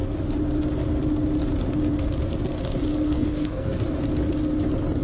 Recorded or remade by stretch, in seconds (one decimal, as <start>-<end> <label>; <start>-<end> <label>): 0.0-2.9 recorded; 2.9-3.8 remade; 3.8-5.0 recorded

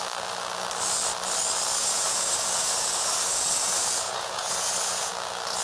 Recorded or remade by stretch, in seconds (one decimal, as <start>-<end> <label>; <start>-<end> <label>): 0.0-1.8 recorded; 1.8-5.1 remade; 5.1-5.6 recorded

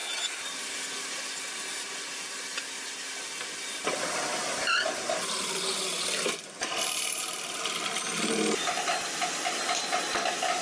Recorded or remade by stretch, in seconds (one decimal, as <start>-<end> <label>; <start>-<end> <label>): 0.0-10.6 recorded

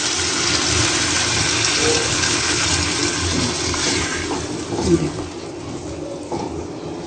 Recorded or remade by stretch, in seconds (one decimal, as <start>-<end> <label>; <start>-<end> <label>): 0.0-2.1 recorded; 2.1-2.6 remade; 2.6-7.1 recorded

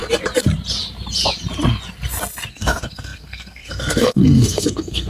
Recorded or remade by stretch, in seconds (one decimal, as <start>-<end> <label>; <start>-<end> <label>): 0.0-2.5 recorded; 2.5-5.1 remade

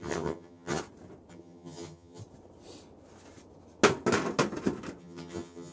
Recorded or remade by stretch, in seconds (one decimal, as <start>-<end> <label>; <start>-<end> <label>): 0.0-0.8 remade; 0.8-1.3 recorded; 1.3-2.2 remade; 2.2-5.0 recorded; 5.0-5.7 remade